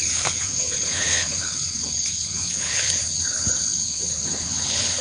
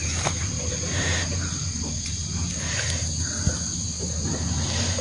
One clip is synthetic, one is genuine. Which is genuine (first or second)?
second